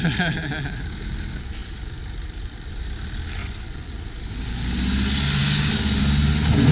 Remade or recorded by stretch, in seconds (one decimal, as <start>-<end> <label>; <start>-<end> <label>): 0.0-3.4 recorded; 3.4-3.9 remade; 3.9-6.7 recorded